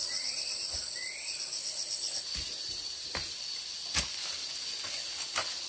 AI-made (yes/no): no